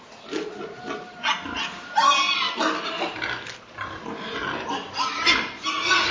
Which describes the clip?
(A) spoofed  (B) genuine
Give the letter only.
B